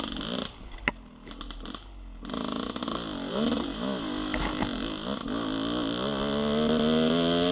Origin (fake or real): real